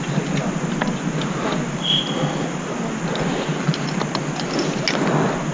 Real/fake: real